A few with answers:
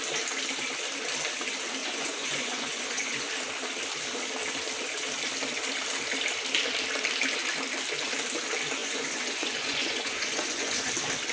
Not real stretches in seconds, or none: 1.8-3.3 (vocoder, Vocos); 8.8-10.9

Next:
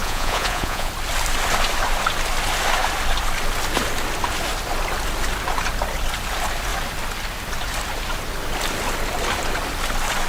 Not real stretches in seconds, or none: 0.0-0.9 (vocoder, Vocos)